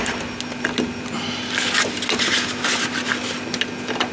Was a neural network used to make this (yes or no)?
no